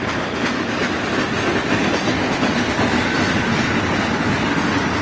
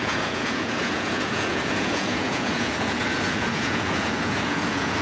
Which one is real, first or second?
first